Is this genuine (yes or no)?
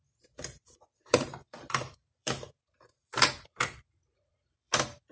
no